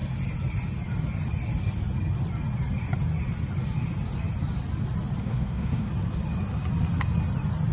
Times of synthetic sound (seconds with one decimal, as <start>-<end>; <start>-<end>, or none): 5.2-5.9